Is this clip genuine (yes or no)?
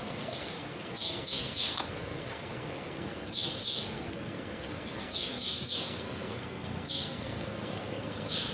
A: no